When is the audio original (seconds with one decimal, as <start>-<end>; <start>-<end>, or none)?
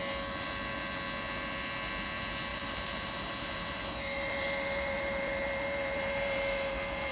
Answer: 0.0-2.5